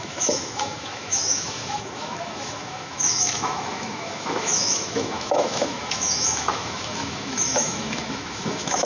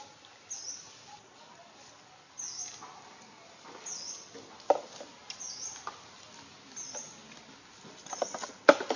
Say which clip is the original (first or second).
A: second